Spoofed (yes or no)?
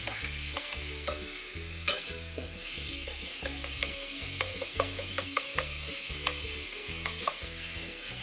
yes